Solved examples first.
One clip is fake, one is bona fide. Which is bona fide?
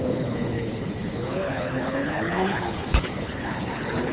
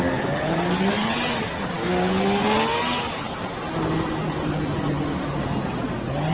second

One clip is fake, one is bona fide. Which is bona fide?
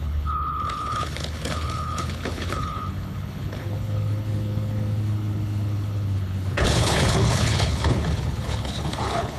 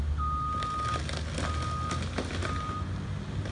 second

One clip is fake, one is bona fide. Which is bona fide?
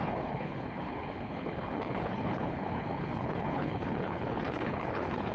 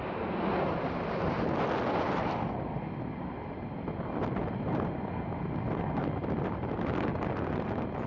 second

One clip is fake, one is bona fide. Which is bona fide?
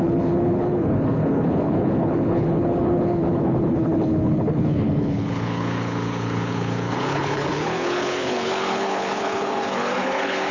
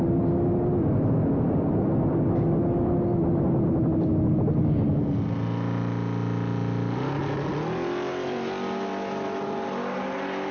second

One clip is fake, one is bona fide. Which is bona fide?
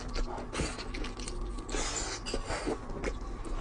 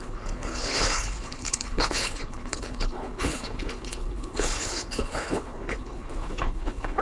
first